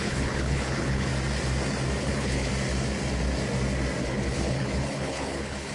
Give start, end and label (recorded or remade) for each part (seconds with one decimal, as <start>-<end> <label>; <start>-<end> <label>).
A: 0.0-1.1 remade; 1.1-2.0 recorded; 2.0-2.5 remade; 2.5-4.0 recorded; 4.0-5.7 remade